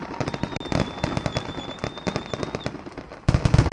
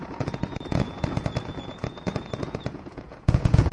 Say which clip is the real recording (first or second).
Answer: first